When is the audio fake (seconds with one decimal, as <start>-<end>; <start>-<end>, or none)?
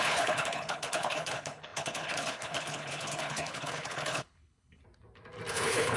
0.0-4.8; 5.5-6.0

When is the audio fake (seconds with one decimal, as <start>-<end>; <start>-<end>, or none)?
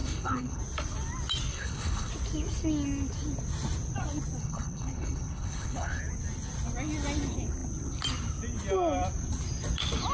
0.0-0.6; 1.5-2.1; 4.4-6.0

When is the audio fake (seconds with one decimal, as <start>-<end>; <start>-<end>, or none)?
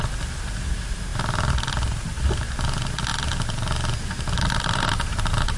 none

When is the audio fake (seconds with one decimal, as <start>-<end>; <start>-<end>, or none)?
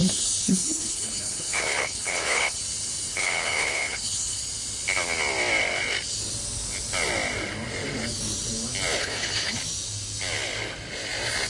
0.0-2.6; 3.1-4.4; 9.0-9.6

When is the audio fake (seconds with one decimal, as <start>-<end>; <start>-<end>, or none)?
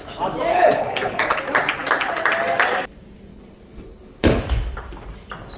0.5-1.4; 3.3-4.4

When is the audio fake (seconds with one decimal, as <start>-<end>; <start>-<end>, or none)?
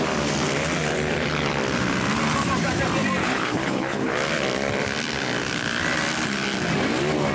3.2-4.1